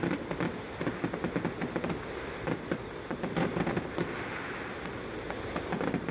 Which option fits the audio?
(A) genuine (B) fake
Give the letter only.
A